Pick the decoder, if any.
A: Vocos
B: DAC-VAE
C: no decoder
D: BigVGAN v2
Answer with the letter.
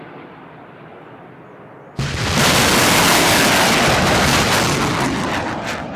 C